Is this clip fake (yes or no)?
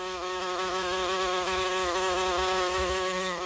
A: yes